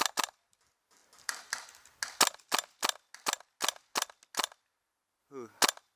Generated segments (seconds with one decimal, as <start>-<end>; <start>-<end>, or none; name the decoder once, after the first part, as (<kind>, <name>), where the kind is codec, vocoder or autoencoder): none